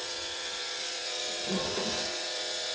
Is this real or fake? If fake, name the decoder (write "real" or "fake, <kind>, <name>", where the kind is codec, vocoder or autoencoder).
fake, vocoder, WaveNeXt